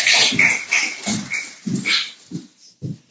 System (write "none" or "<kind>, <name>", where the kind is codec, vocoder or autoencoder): none